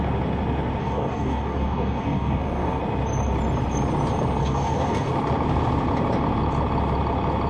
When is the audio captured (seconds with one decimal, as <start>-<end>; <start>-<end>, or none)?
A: 0.0-0.8; 2.8-4.4; 5.1-7.5